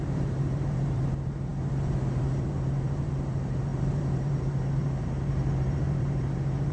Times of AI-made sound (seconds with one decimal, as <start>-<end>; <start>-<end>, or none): 0.0-6.7